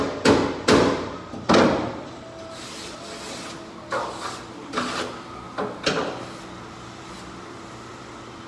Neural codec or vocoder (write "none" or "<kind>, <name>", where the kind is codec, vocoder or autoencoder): none